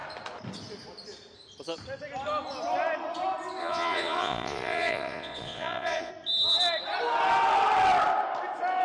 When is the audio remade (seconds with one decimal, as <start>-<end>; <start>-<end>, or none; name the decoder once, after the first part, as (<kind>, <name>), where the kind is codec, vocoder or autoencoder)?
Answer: 3.6-6.1 (vocoder, Vocos)